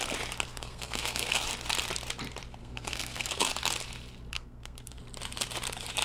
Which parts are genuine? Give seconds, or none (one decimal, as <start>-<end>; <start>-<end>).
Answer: 0.0-0.5; 1.4-2.6; 3.5-4.3; 5.0-6.0